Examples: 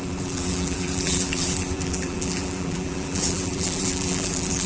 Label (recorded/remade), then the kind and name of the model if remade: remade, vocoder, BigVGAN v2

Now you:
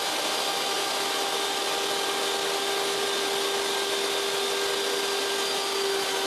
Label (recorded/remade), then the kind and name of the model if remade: recorded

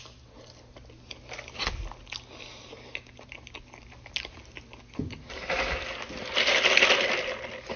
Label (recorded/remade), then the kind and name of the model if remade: recorded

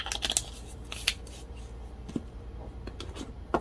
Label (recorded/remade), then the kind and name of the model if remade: recorded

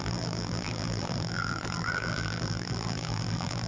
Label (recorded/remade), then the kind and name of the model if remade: remade, vocoder, BigVGAN v2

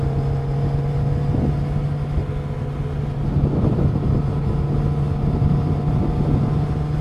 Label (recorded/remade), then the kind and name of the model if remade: recorded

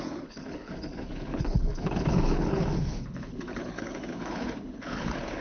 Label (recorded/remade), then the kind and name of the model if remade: remade, codec, HILCodec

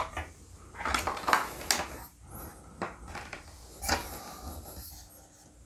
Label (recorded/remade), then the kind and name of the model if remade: recorded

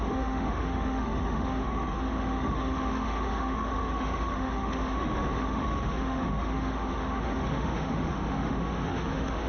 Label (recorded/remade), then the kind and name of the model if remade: remade, autoencoder, DAC-VAE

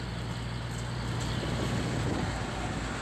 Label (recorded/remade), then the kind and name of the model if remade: recorded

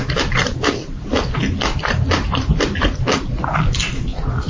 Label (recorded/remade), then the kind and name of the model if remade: recorded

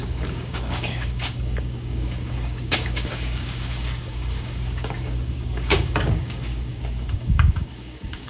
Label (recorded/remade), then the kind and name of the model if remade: remade, codec, DAC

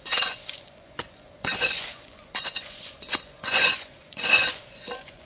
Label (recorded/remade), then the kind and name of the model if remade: remade, vocoder, Vocos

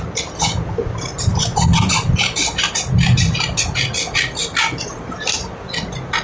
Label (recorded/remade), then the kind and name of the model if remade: recorded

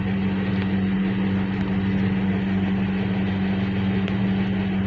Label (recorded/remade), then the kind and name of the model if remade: recorded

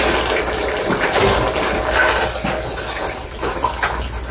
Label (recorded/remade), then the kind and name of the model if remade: recorded